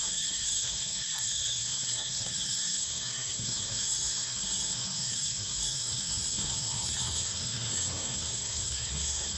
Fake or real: fake